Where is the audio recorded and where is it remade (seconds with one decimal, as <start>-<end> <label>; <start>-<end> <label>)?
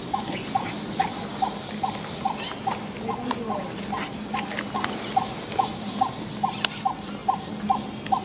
0.0-8.2 recorded